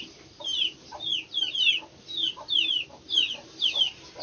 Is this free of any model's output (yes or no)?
yes